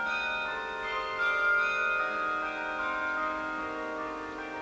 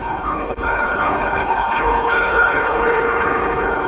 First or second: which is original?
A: first